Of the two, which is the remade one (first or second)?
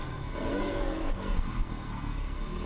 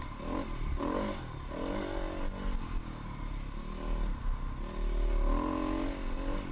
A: first